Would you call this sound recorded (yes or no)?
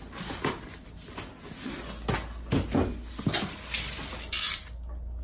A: yes